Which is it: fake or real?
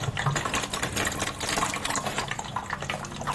real